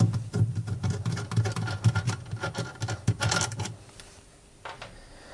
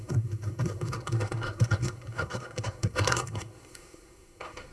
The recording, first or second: first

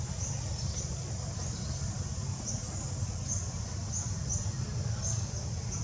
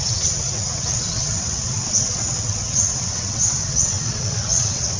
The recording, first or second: first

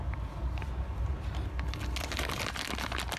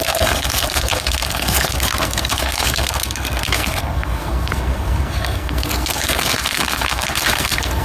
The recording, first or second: first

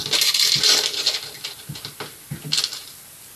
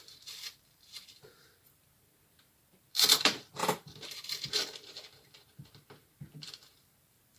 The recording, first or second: first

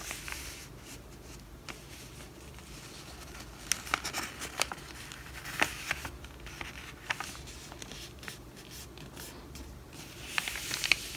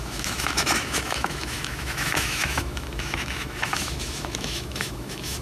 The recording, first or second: first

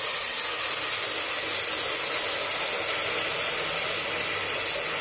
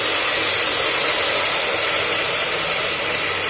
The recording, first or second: first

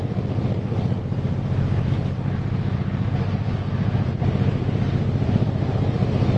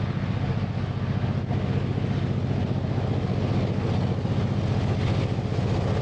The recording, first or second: second